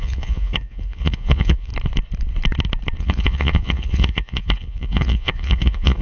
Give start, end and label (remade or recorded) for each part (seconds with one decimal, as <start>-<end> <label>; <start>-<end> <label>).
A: 0.0-1.7 remade; 1.7-3.0 recorded; 3.0-6.0 remade